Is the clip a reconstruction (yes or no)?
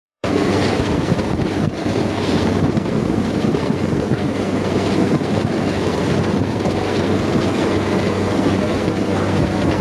yes